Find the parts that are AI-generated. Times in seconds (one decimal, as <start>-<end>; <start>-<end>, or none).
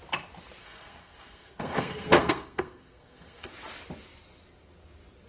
0.6-3.5